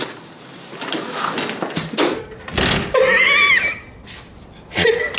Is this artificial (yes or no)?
no